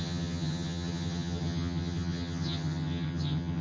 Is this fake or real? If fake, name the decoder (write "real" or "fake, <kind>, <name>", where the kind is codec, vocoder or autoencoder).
fake, vocoder, HiFi-GAN